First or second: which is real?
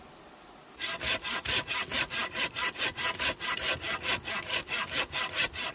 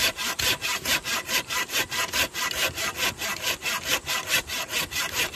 first